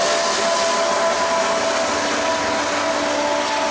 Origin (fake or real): real